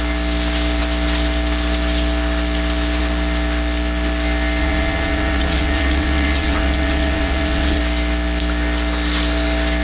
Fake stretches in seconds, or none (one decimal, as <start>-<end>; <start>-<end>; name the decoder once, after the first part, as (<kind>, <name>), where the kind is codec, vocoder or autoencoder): 4.6-7.8 (vocoder, WaveNeXt)